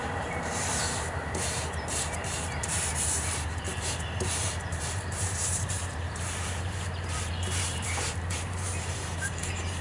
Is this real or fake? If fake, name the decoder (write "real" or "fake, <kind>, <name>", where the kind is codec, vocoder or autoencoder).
fake, vocoder, BigVGAN v2